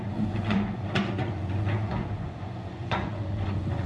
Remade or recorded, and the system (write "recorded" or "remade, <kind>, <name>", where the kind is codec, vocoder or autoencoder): remade, vocoder, Vocos